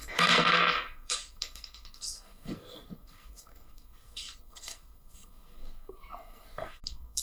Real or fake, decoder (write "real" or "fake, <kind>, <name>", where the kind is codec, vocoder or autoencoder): fake, codec, SNAC